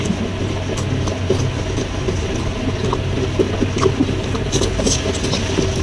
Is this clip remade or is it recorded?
recorded